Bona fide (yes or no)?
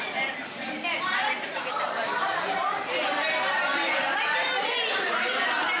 no